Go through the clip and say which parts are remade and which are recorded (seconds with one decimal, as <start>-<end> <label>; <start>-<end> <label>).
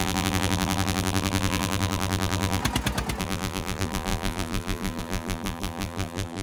0.0-2.6 remade; 2.6-3.2 recorded; 3.2-6.4 remade